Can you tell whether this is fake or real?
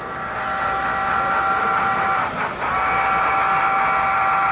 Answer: real